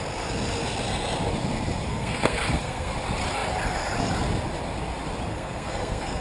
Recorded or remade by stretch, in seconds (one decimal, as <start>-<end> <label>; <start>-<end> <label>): 0.0-1.9 recorded; 1.9-2.9 remade; 2.9-5.3 recorded; 5.3-6.2 remade